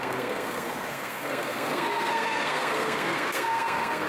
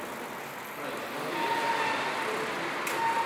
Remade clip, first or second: first